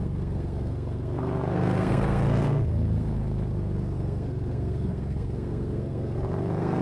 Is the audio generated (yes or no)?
yes